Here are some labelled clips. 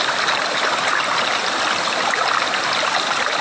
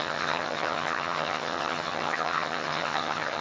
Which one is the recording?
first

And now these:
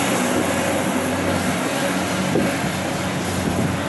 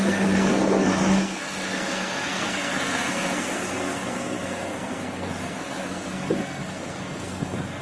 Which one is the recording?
first